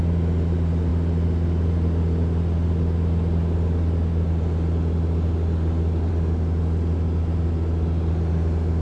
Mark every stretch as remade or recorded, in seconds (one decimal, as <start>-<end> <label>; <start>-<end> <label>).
0.0-8.8 recorded